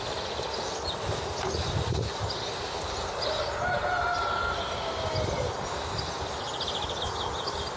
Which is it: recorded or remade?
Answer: recorded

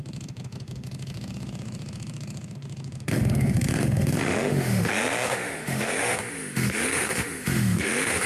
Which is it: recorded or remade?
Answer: remade